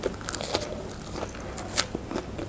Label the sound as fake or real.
real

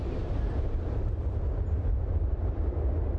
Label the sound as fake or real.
real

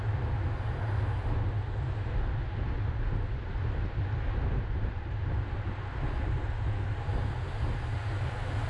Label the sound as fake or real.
real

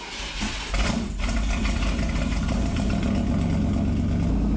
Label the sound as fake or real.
real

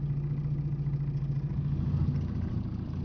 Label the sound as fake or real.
real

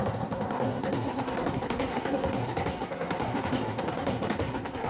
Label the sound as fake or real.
fake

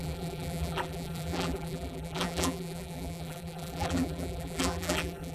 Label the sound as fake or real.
fake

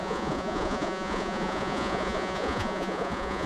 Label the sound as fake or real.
fake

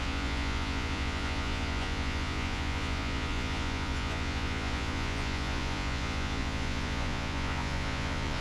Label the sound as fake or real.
fake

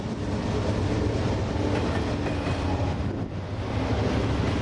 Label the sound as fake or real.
real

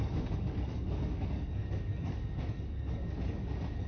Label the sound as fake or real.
fake